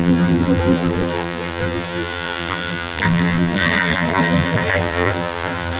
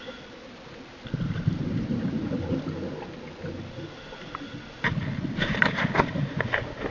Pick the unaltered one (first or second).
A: second